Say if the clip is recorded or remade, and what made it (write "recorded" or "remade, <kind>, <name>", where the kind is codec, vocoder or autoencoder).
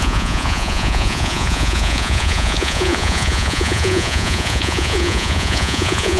remade, vocoder, Vocos